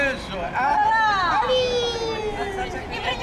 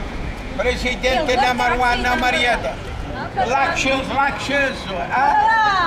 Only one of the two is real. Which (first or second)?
first